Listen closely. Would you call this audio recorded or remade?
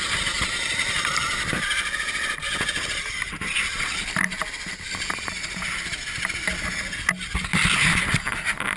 recorded